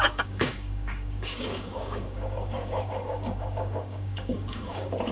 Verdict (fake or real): fake